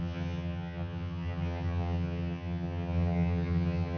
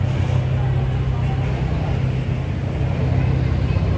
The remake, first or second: first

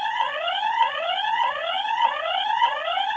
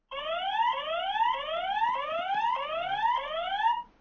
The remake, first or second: first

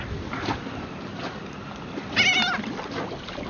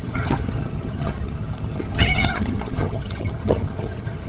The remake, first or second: second